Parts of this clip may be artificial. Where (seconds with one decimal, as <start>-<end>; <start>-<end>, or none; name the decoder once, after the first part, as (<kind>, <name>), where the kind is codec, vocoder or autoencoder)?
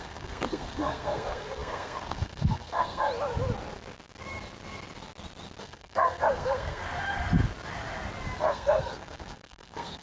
0.0-3.1 (codec, SNAC); 5.6-6.8; 8.4-10.0